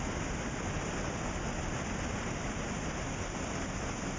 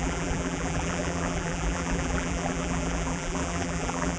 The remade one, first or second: second